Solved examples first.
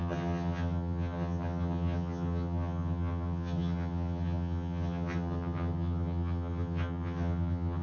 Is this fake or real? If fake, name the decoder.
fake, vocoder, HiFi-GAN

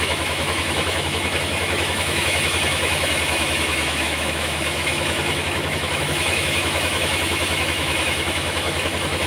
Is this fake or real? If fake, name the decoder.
fake, autoencoder, DAC-VAE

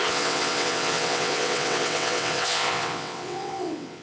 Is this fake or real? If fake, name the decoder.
fake, vocoder, WaveNeXt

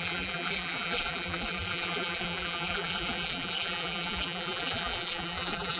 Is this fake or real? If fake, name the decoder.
fake, vocoder, BigVGAN v2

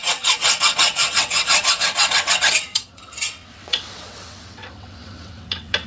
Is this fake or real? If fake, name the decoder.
fake, vocoder, WaveNeXt